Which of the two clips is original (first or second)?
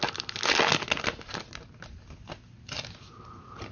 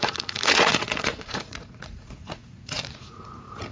first